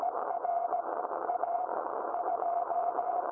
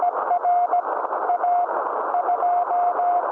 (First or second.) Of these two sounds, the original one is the second